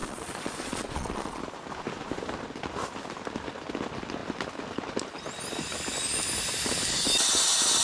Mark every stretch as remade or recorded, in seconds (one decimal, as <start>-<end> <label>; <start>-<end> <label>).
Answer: 0.0-1.4 remade; 1.4-7.8 recorded